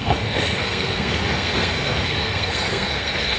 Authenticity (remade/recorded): remade